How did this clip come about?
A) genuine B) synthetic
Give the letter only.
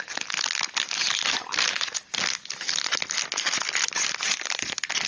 A